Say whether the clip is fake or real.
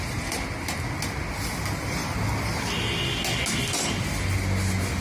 real